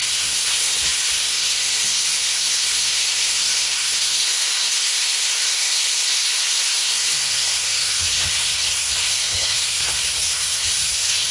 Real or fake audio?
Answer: fake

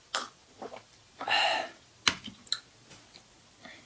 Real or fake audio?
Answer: real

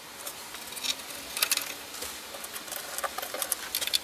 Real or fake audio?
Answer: real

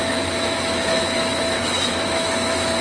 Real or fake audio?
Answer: fake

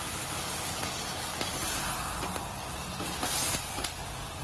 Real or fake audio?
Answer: real